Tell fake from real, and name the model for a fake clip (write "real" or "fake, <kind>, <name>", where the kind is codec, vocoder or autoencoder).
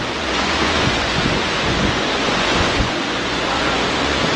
fake, vocoder, Vocos